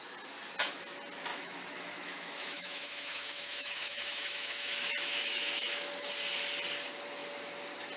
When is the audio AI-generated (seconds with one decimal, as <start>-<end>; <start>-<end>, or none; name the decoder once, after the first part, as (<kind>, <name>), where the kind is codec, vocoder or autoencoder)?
1.3-6.1 (autoencoder, DAC-VAE)